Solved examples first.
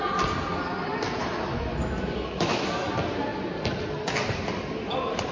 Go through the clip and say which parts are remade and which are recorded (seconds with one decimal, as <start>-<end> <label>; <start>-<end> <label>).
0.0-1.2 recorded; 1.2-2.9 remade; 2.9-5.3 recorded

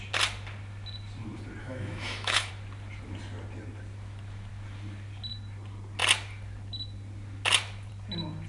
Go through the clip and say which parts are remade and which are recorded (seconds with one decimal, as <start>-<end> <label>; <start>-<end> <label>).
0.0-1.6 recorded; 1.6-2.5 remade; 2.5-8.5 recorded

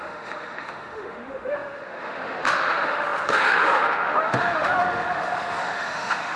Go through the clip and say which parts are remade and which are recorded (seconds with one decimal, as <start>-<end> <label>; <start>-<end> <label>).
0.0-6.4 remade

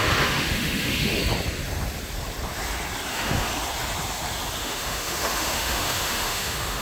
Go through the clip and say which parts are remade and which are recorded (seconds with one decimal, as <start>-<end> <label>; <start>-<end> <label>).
0.0-1.2 remade; 1.2-3.1 recorded; 3.1-3.5 remade; 3.5-4.6 recorded; 4.6-6.8 remade